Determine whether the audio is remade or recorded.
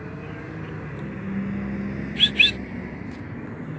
recorded